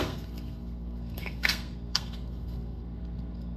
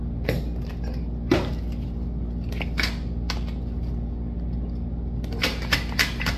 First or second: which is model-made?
first